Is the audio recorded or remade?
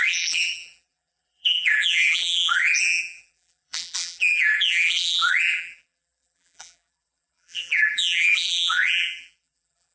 remade